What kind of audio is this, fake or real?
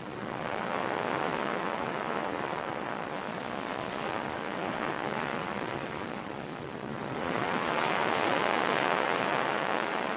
fake